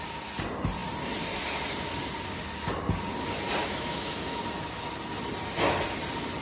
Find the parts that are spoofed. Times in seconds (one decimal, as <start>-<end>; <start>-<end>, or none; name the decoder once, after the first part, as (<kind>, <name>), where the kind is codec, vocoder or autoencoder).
3.6-4.4 (autoencoder, DAC-VAE)